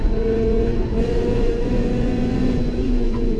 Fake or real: fake